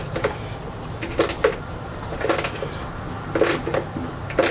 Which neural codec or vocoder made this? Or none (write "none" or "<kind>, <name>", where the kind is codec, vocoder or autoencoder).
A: none